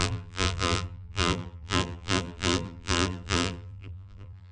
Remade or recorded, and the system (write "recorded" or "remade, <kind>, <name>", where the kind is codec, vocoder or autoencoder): remade, vocoder, BigVGAN v2